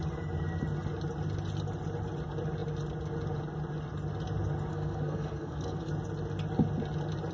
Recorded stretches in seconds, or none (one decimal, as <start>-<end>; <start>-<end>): 0.0-4.7; 5.9-7.3

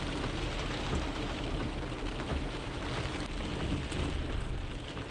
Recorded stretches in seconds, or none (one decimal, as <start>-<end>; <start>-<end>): 0.0-2.3; 2.8-5.1

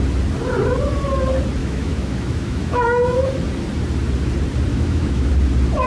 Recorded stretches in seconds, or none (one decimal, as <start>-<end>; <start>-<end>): 0.0-1.6; 3.2-4.7; 5.3-5.9